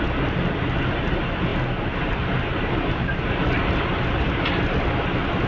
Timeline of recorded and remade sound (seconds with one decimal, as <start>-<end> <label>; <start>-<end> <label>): 0.0-5.5 recorded